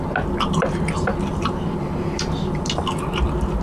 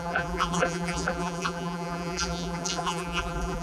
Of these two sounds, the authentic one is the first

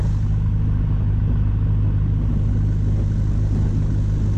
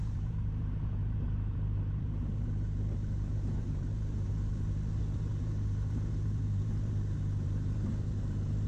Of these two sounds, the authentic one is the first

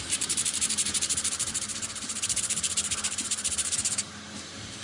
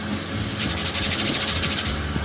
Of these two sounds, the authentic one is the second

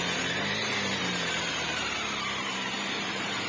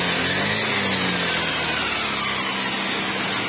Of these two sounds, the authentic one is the second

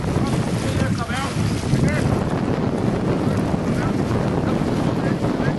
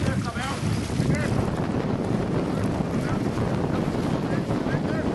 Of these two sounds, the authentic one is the first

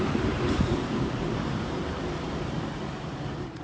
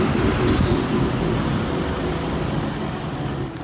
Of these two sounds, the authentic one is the second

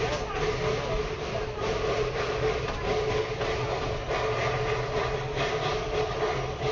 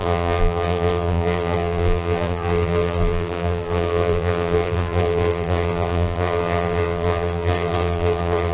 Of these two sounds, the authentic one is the first